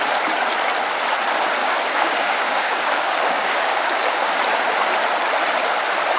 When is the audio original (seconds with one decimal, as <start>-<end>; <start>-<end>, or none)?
0.0-1.6; 4.4-6.2